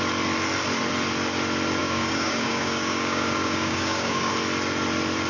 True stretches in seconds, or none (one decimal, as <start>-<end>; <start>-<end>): 0.0-1.8; 4.3-5.3